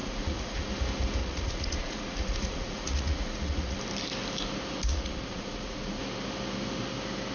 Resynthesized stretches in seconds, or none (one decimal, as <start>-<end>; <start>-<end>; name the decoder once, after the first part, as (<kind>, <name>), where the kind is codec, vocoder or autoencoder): 0.0-0.7 (vocoder, Vocos); 1.2-3.8; 4.9-6.0